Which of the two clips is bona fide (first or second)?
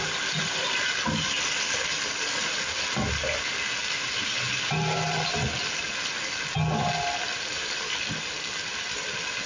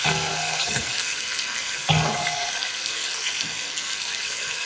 first